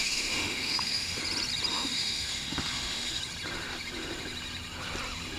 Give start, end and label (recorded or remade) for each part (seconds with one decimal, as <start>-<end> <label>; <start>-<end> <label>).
0.0-1.2 remade; 1.2-1.7 recorded; 1.7-3.2 remade; 3.2-5.4 recorded